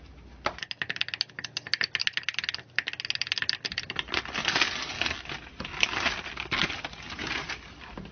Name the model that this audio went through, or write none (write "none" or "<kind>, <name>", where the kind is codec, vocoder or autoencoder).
none